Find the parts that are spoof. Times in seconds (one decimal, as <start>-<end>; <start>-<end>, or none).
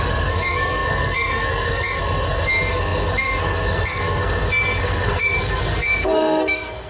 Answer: 0.0-6.9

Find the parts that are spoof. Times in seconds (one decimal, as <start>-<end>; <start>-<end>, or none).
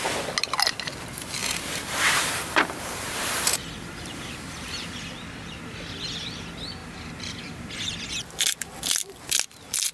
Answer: 1.4-4.9; 6.8-7.7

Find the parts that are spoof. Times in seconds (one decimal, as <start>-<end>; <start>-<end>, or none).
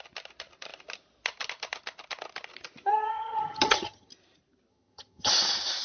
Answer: 2.9-4.1; 4.7-5.3